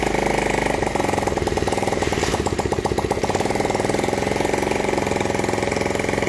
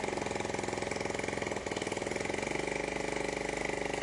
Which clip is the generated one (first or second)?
first